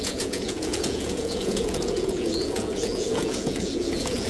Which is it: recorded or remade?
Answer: remade